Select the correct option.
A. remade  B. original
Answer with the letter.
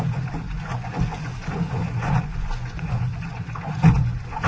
A